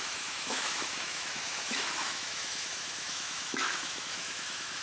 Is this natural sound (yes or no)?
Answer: no